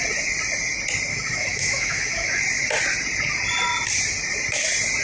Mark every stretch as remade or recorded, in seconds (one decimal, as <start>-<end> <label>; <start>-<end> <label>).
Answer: 0.0-1.1 recorded; 1.1-2.4 remade; 2.4-5.0 recorded